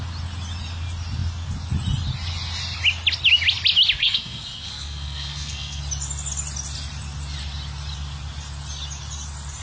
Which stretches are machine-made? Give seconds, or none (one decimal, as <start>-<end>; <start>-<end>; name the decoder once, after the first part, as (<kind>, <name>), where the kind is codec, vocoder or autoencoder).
4.0-5.8 (codec, SNAC)